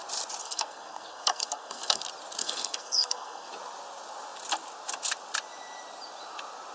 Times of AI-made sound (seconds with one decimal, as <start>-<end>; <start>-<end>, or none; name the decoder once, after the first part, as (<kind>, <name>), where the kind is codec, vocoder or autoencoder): 0.4-2.0 (codec, SNAC); 2.4-3.5